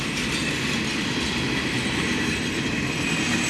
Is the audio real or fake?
real